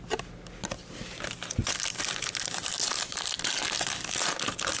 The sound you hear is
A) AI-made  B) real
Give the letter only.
B